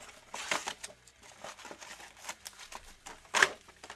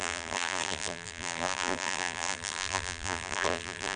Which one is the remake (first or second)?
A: second